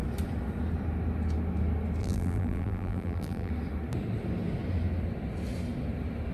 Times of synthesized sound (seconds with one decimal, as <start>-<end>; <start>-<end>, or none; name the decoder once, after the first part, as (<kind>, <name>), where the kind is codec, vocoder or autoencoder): 2.0-3.5 (vocoder, BigVGAN v2)